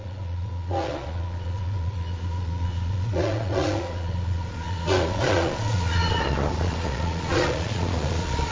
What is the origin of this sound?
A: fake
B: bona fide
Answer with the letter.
A